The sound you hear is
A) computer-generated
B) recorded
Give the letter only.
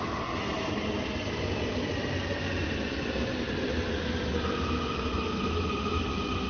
B